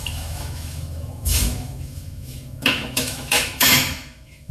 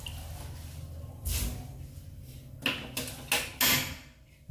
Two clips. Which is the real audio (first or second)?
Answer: second